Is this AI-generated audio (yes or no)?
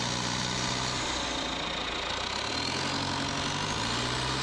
no